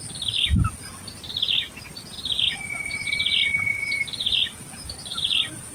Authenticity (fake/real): real